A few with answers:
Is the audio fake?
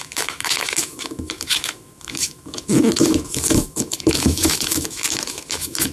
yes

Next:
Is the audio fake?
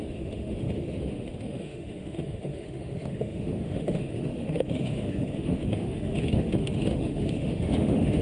yes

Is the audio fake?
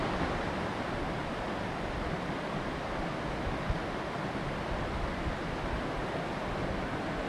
no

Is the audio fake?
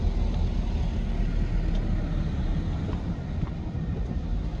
no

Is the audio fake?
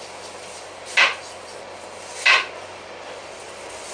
no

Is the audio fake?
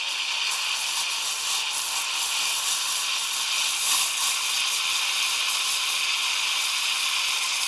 no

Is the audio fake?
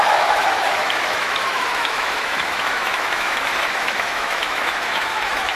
yes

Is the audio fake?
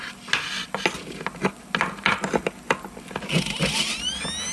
no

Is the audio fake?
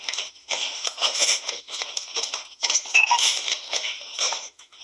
yes